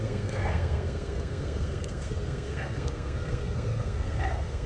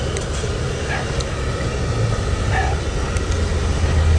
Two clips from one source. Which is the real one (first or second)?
second